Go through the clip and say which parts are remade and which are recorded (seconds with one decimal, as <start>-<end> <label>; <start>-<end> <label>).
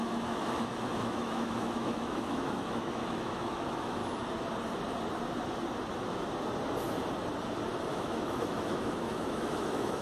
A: 0.0-4.0 remade; 4.0-7.9 recorded; 7.9-10.0 remade